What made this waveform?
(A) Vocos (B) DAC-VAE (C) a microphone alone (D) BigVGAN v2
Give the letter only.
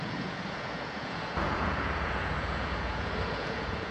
A